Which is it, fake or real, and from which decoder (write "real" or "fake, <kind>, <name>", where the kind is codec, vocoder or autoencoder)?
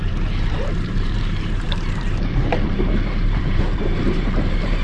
fake, vocoder, BigVGAN v2